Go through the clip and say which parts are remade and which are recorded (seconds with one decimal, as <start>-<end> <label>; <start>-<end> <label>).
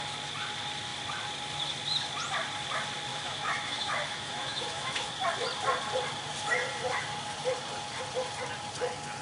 0.0-3.1 recorded; 3.1-5.1 remade; 5.1-9.2 recorded